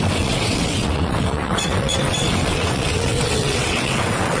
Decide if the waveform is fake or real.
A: fake